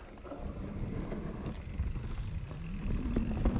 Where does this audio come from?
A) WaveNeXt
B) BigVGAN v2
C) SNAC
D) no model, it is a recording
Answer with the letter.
D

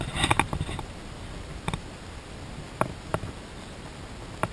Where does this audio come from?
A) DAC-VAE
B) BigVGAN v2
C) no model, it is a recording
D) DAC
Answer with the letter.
B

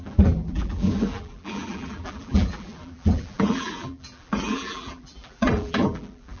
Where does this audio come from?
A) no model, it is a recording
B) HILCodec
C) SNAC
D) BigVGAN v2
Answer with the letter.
D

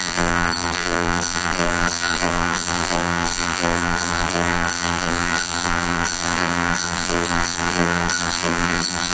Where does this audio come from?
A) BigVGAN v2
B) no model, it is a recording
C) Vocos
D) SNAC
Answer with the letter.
A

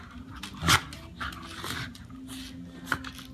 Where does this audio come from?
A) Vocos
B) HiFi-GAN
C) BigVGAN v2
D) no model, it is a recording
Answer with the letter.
D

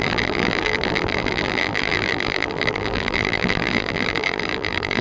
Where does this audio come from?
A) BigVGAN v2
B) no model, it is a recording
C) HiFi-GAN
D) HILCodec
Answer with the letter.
A